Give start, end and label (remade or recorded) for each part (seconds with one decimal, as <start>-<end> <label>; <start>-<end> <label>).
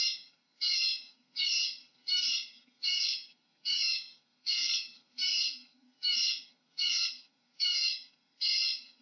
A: 0.0-9.0 remade